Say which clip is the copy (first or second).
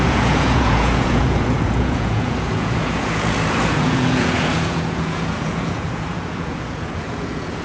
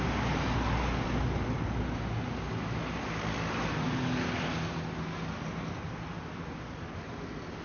first